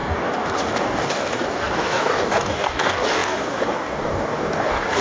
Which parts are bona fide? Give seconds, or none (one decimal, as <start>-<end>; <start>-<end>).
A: none